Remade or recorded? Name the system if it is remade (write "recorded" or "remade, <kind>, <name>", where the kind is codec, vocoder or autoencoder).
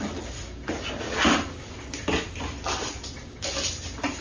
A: recorded